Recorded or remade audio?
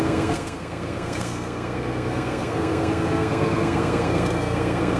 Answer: remade